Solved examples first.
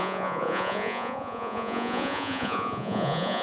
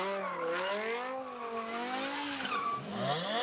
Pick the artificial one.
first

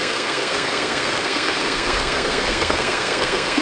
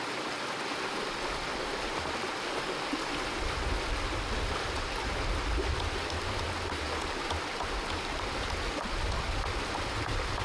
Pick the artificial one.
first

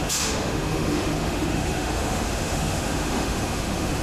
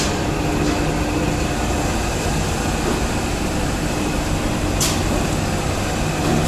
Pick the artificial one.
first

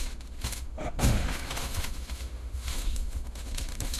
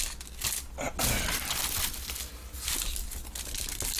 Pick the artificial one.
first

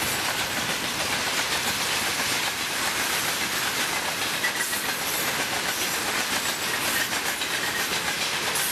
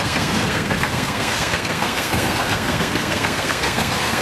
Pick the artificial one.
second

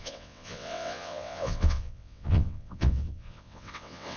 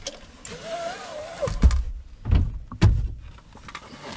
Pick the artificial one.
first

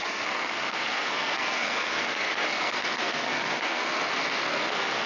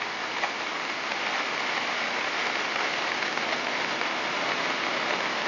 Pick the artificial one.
first